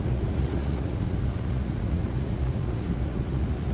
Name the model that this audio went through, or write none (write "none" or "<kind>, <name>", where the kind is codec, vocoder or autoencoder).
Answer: vocoder, Vocos